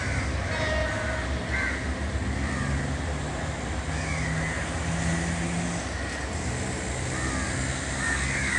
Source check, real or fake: real